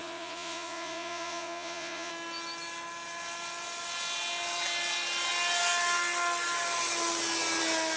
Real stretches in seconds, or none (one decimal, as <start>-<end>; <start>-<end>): 2.1-8.0